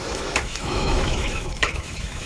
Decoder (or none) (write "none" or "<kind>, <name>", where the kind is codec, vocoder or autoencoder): autoencoder, DAC-VAE